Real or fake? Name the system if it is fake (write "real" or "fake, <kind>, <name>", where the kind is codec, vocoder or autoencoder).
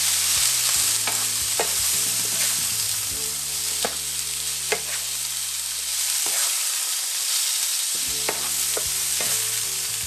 fake, vocoder, BigVGAN v2